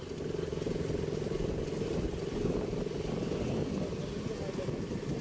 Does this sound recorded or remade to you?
recorded